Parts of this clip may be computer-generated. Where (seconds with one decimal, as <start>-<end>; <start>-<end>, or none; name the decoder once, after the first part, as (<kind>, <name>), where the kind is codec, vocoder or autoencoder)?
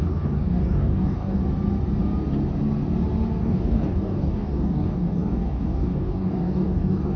0.0-1.4 (codec, DAC); 3.4-7.2